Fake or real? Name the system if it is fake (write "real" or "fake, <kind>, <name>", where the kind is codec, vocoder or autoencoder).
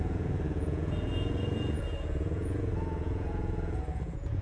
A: fake, vocoder, Vocos